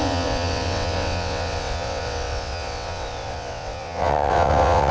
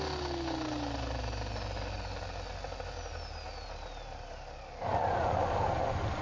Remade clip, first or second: first